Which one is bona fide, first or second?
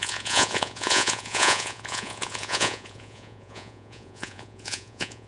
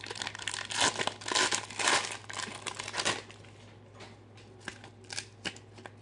second